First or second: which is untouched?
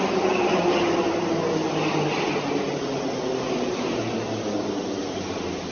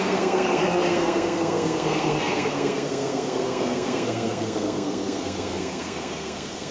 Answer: first